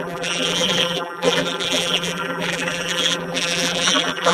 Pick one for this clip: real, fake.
fake